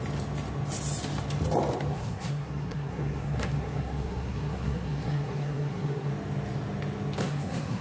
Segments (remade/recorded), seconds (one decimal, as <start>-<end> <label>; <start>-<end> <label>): 0.0-1.9 recorded; 1.9-6.1 remade; 6.1-7.2 recorded; 7.2-7.8 remade